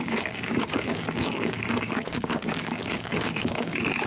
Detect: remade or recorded remade